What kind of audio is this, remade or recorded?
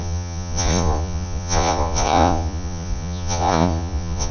remade